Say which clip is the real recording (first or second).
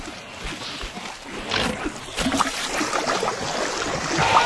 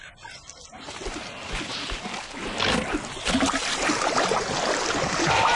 first